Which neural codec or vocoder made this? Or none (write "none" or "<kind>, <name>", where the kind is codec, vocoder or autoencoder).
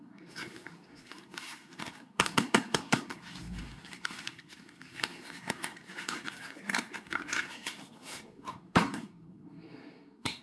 codec, SNAC